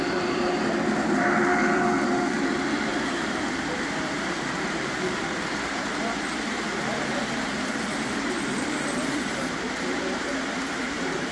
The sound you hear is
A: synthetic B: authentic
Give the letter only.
A